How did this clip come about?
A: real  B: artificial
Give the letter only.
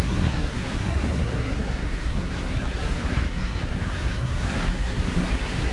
B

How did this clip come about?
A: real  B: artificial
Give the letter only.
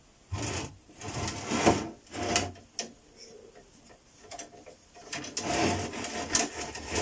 A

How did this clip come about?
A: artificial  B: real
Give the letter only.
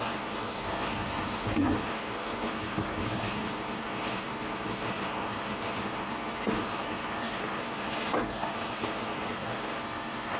A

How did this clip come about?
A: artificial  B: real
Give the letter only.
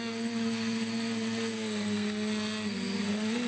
A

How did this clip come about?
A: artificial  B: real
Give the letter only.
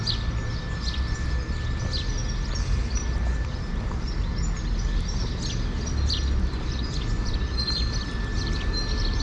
B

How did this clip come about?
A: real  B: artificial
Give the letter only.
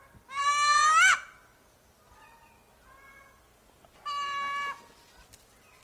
A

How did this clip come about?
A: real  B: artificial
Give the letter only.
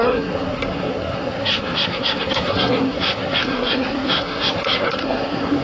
B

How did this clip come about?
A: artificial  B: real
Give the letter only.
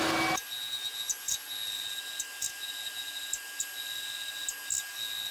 B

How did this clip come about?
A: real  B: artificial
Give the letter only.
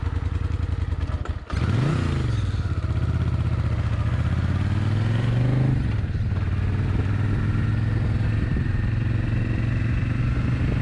A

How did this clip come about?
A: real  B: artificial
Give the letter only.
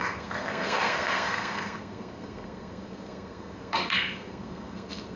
B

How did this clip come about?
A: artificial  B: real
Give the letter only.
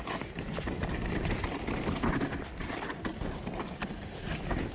B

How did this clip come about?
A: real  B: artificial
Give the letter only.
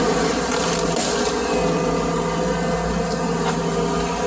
A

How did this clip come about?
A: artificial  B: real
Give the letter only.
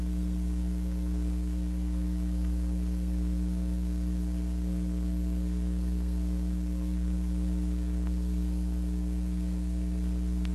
A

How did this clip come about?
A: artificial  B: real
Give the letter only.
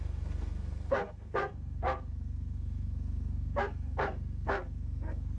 A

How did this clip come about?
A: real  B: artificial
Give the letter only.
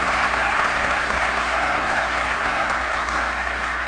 B